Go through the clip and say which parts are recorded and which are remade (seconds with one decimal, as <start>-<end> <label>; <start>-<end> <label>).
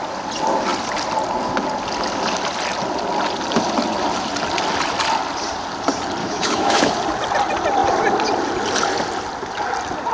0.0-6.2 recorded; 6.2-6.9 remade; 6.9-10.1 recorded